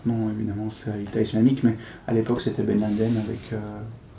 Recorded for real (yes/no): yes